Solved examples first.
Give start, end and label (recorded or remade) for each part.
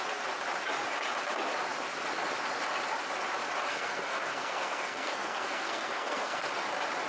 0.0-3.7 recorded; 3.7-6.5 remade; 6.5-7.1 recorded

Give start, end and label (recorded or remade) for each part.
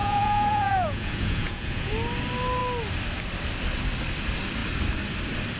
0.0-1.9 remade; 1.9-5.6 recorded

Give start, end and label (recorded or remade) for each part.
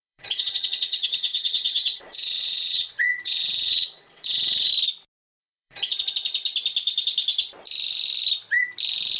0.0-4.7 remade; 4.7-5.4 recorded; 5.4-5.9 remade; 5.9-9.2 recorded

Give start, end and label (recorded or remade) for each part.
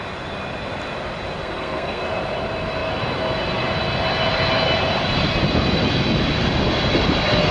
0.0-1.4 recorded; 1.4-2.0 remade; 2.0-7.5 recorded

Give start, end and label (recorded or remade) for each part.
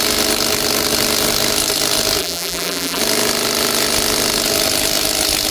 0.0-2.2 recorded; 2.2-3.0 remade; 3.0-5.5 recorded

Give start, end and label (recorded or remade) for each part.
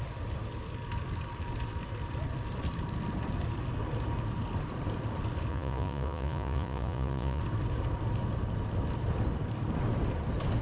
0.0-5.5 recorded; 5.5-7.4 remade; 7.4-10.6 recorded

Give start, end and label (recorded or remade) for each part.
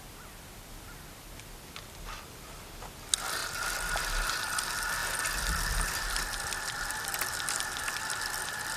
0.0-8.8 recorded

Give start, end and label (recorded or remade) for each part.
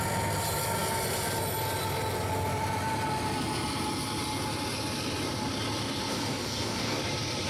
0.0-6.1 recorded; 6.1-7.0 remade; 7.0-7.5 recorded